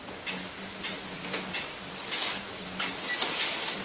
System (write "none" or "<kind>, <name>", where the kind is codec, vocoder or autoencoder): none